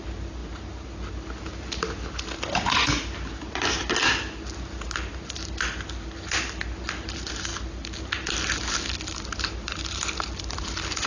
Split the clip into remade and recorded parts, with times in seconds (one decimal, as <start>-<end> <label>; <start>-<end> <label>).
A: 0.0-11.1 recorded